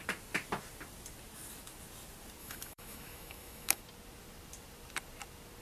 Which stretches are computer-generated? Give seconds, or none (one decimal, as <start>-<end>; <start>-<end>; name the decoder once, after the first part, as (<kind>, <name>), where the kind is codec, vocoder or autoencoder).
2.4-3.8 (autoencoder, DAC-VAE)